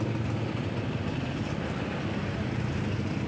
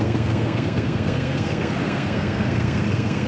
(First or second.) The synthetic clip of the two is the second